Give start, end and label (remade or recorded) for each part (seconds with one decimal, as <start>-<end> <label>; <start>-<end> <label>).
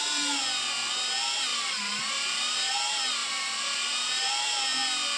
0.0-1.5 recorded; 1.5-2.7 remade; 2.7-3.2 recorded; 3.2-4.3 remade; 4.3-5.2 recorded